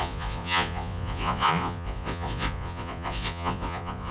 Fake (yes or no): yes